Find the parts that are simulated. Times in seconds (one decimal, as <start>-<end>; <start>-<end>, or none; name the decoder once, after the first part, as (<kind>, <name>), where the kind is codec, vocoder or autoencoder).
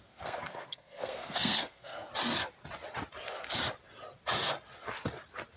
0.0-2.1 (codec, SNAC)